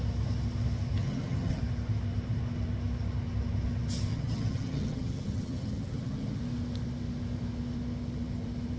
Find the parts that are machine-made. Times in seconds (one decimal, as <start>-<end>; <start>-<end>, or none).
1.0-1.6; 4.1-6.4